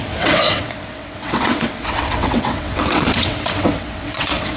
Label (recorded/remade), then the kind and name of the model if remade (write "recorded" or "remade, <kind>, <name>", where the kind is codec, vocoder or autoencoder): remade, vocoder, WaveNeXt